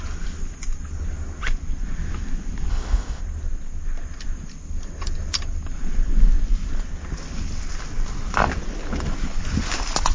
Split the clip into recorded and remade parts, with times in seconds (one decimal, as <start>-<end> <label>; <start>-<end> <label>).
0.0-2.7 recorded; 2.7-3.2 remade; 3.2-10.1 recorded